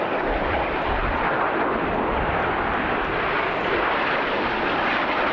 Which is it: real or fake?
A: real